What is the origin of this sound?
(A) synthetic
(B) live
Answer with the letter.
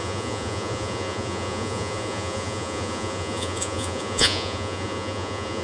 A